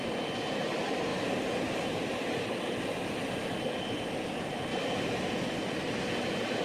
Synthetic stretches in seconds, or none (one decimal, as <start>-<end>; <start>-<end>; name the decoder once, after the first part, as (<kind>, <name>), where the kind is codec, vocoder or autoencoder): 1.1-2.6 (vocoder, BigVGAN v2)